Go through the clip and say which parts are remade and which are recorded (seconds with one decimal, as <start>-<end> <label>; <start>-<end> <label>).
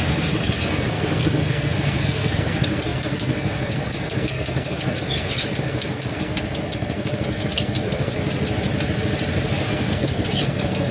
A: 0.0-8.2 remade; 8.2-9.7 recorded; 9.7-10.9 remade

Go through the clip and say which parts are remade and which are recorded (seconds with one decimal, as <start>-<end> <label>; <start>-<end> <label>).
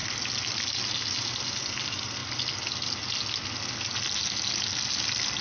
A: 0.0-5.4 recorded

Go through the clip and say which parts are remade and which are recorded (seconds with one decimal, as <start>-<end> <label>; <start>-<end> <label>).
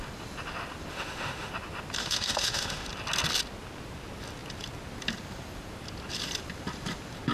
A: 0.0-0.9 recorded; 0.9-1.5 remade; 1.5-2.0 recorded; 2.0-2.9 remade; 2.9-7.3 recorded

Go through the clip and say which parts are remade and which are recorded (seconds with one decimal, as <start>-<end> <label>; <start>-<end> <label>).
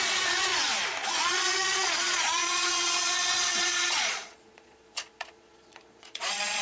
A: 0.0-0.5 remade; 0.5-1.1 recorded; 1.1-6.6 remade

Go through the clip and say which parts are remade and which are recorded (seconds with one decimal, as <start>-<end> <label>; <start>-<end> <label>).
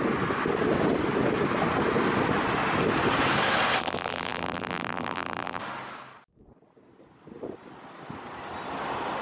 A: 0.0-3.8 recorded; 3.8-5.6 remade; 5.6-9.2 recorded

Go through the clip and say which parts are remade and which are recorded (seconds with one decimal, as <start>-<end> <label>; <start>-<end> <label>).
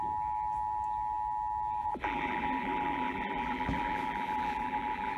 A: 0.0-1.8 recorded; 1.8-5.2 remade